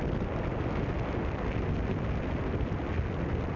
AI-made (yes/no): no